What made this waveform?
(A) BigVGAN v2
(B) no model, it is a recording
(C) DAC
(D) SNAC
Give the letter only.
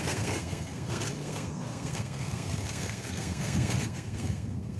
D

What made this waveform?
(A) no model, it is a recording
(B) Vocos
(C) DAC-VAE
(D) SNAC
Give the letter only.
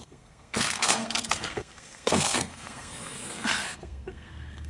D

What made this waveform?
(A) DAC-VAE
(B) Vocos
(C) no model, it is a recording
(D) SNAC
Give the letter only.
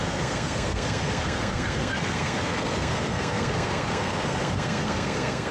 D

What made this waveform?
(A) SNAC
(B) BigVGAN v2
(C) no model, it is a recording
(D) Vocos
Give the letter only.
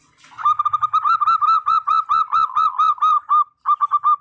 C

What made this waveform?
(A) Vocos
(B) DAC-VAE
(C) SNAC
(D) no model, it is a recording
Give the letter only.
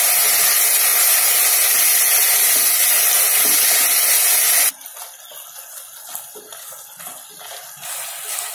D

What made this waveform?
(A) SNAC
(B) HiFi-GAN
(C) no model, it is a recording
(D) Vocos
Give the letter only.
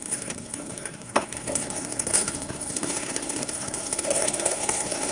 A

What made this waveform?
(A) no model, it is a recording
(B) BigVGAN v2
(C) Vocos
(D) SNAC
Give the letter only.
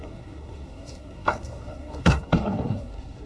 D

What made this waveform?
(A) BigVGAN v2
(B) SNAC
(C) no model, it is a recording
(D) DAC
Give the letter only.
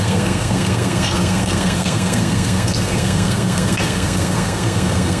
B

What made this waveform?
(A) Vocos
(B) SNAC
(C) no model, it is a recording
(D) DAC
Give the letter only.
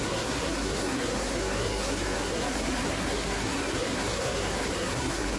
B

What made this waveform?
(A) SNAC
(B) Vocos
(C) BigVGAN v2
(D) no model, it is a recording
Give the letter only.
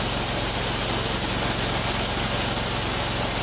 D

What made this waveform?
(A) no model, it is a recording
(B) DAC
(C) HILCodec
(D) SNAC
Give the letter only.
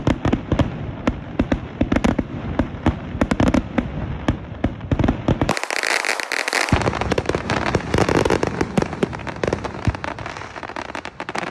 A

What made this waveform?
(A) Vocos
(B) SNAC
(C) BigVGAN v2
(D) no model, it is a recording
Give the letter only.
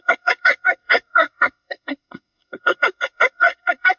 B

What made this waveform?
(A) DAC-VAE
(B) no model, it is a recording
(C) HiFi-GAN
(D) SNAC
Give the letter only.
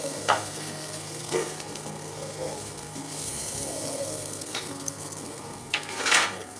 D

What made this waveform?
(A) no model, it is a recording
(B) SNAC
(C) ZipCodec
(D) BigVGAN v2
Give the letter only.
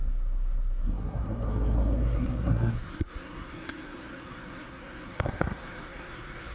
B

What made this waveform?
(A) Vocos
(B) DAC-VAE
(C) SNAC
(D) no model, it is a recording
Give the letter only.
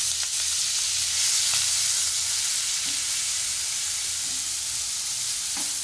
D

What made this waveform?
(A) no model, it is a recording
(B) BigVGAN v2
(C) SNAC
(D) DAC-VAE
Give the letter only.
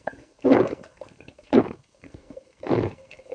C